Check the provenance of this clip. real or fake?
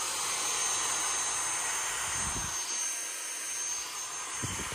real